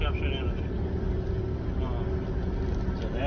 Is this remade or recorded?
recorded